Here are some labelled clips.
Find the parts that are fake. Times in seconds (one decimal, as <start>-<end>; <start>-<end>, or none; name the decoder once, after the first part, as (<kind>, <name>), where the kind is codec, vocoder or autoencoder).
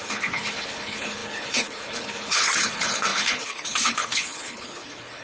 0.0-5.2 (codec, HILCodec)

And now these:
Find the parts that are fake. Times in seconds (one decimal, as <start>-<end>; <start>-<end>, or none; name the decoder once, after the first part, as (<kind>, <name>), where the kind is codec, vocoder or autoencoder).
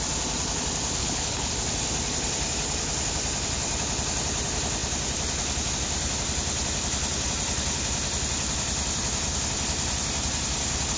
1.0-1.5 (codec, HILCodec)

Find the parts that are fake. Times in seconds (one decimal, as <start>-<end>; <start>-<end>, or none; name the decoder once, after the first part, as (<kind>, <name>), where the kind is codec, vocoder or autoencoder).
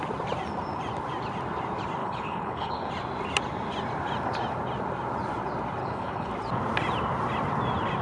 2.0-2.9 (codec, HILCodec); 5.8-6.3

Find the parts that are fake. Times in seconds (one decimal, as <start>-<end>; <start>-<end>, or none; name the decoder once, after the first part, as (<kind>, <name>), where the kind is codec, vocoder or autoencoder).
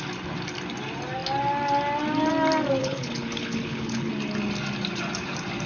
2.8-4.1 (codec, HILCodec)